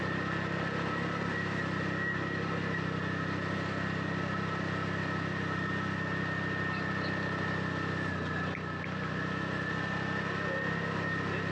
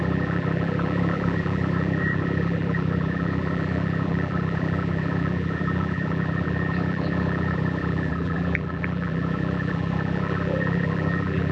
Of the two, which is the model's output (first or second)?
second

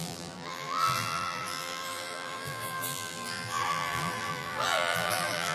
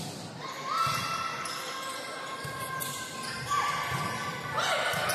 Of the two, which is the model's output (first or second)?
first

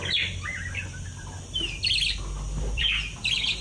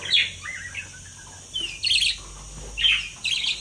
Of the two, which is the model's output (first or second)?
first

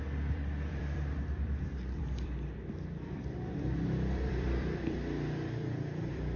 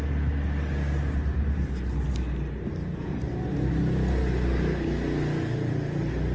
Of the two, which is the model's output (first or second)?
first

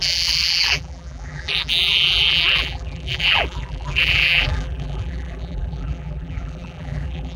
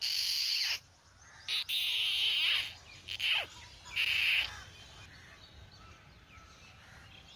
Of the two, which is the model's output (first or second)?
first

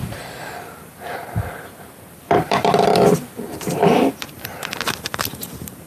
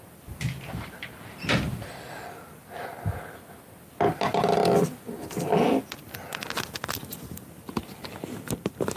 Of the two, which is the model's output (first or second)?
first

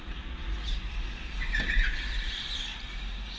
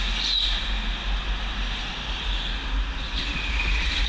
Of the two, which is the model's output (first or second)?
first